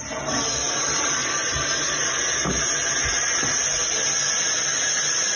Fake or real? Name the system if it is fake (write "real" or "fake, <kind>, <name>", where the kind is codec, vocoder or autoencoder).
real